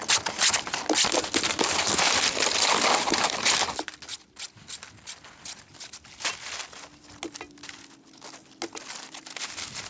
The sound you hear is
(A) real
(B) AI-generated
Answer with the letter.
A